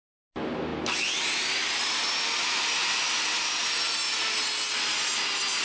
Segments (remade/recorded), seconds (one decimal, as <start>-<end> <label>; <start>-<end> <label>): 0.0-5.6 recorded